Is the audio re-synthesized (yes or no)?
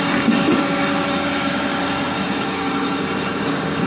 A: yes